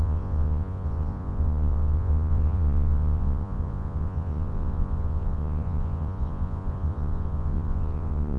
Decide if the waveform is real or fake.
fake